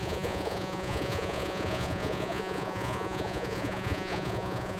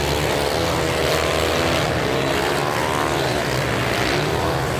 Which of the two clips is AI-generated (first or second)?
first